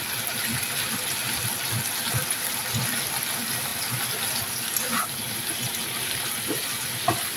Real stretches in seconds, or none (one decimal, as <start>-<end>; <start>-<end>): 0.0-7.4